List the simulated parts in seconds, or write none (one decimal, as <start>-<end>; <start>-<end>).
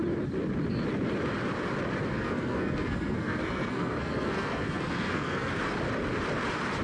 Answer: 2.1-5.5